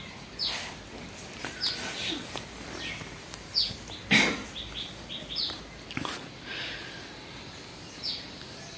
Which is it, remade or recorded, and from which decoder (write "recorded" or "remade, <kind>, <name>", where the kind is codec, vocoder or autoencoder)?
recorded